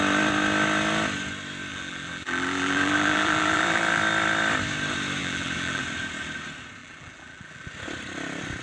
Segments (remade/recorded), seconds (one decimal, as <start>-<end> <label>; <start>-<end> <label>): 0.0-1.7 recorded; 1.7-4.0 remade; 4.0-5.2 recorded; 5.2-5.8 remade; 5.8-6.8 recorded; 6.8-7.7 remade; 7.7-8.6 recorded